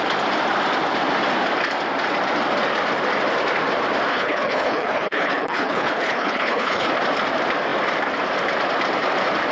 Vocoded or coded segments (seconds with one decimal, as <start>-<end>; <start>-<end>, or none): 4.1-6.9